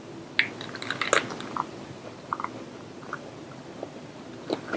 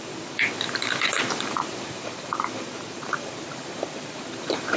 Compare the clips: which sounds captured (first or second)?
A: first